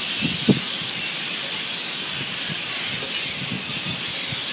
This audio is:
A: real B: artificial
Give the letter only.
A